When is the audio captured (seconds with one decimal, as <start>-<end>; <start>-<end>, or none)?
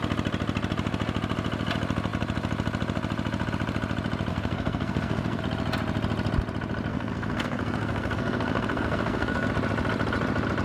0.0-4.3; 5.4-6.9; 9.5-10.6